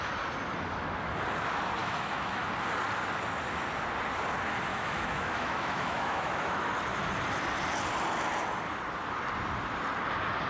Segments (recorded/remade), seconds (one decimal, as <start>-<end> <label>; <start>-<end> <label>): 0.0-1.8 recorded; 1.8-2.5 remade; 2.5-4.7 recorded; 4.7-6.7 remade; 6.7-10.5 recorded